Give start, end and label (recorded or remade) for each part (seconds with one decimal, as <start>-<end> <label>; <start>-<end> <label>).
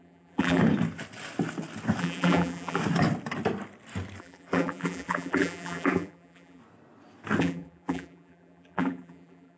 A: 0.0-0.6 remade; 0.6-2.0 recorded; 2.0-2.8 remade; 2.8-4.2 recorded; 4.2-6.6 remade; 6.6-7.4 recorded; 7.4-9.6 remade